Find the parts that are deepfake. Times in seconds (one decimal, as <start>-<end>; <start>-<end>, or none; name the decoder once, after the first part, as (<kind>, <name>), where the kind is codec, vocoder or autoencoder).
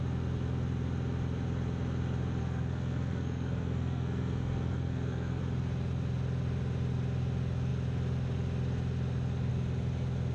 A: 2.4-5.4 (codec, SNAC)